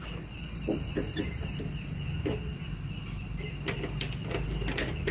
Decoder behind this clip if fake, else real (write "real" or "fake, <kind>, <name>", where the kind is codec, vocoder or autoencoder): real